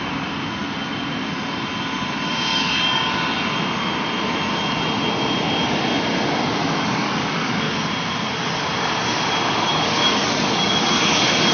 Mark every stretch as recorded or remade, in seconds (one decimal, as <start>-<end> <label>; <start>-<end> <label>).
0.0-2.5 recorded; 2.5-3.1 remade; 3.1-6.6 recorded; 6.6-7.6 remade; 7.6-9.7 recorded; 9.7-10.7 remade; 10.7-11.5 recorded